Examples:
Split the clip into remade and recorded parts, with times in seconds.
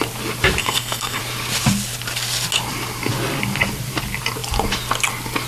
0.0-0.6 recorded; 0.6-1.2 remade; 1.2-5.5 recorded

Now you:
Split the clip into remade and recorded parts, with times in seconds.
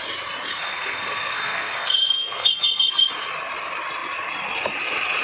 0.0-0.5 recorded; 0.5-3.1 remade; 3.1-5.2 recorded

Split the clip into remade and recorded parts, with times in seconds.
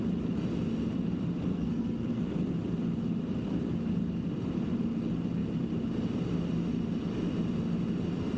0.0-1.5 recorded; 1.5-2.2 remade; 2.2-8.4 recorded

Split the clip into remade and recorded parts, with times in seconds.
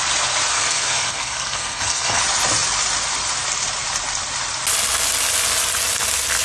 0.0-0.5 recorded; 0.5-2.2 remade; 2.2-6.4 recorded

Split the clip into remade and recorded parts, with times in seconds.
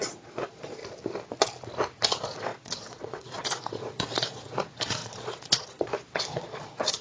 0.0-0.8 remade; 0.8-2.1 recorded; 2.1-7.0 remade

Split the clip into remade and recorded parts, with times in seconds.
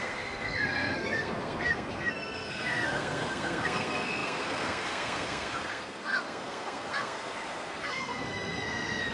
0.0-9.1 remade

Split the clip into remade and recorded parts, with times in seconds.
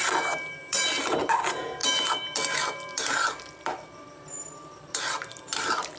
0.0-6.0 remade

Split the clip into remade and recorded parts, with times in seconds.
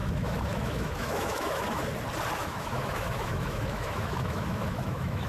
0.0-1.8 remade; 1.8-2.4 recorded; 2.4-5.3 remade